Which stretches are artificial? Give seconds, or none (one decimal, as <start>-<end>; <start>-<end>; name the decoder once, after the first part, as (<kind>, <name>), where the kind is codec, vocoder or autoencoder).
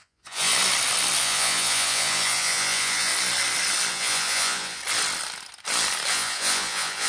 0.0-0.5 (vocoder, Vocos); 1.2-3.1; 3.9-4.8; 6.1-7.1